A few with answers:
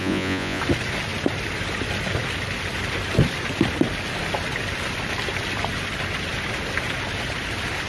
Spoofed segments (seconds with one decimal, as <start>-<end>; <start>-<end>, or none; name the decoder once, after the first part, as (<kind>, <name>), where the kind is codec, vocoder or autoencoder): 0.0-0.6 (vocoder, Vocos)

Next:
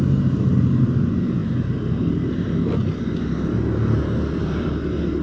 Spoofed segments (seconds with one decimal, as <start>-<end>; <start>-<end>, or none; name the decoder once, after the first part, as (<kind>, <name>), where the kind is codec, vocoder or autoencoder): none

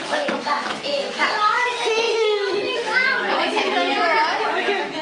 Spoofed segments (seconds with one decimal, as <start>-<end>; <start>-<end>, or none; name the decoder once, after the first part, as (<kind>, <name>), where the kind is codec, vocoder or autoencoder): 0.0-1.2 (autoencoder, DAC-VAE); 1.9-5.0